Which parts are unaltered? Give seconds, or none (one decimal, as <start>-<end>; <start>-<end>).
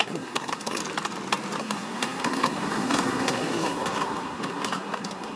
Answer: 0.8-1.6